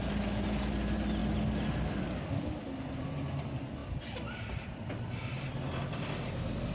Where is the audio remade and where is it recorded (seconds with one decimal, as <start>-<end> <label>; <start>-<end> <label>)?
0.0-6.7 recorded